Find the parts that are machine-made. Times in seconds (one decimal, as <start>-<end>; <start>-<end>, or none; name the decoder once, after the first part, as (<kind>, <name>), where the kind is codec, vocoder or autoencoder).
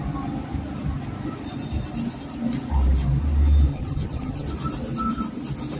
3.7-4.5 (vocoder, HiFi-GAN)